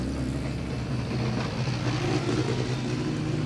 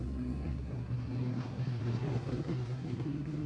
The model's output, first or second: second